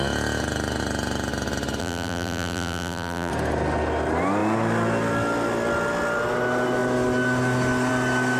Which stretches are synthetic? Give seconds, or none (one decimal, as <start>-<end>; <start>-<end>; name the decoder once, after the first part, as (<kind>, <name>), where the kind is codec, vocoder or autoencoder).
1.8-3.3 (vocoder, BigVGAN v2)